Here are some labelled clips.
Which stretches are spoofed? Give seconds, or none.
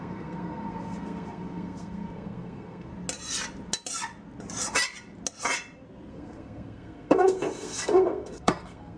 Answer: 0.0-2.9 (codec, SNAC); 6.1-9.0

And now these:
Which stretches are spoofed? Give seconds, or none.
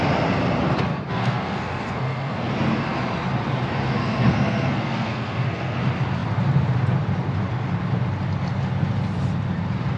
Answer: 1.1-2.5 (codec, SNAC); 4.0-5.8